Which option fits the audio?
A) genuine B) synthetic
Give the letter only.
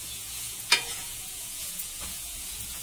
B